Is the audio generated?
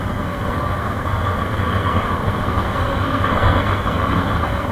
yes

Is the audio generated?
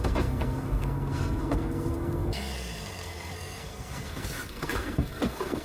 yes